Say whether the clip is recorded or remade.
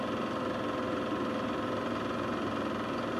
recorded